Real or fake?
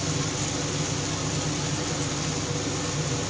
real